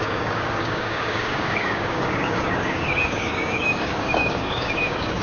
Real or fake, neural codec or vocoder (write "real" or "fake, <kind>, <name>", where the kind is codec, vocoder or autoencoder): fake, codec, DAC